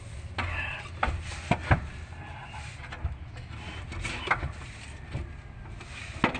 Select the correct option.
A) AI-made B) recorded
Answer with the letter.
B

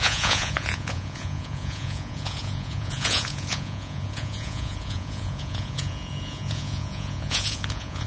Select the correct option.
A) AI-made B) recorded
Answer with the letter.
A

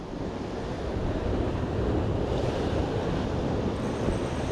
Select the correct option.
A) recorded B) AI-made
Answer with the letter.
A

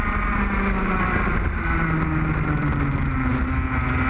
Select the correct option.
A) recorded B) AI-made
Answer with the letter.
A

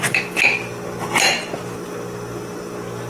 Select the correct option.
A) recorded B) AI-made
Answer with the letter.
A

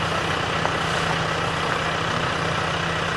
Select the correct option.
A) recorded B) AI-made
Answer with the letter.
A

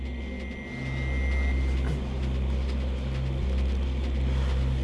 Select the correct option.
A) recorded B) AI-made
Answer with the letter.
A